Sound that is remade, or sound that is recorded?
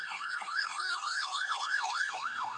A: remade